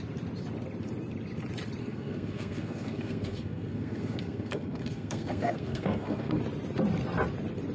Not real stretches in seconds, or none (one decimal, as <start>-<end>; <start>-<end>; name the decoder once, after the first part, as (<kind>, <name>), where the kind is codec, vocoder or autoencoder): 1.8-6.4 (codec, SNAC)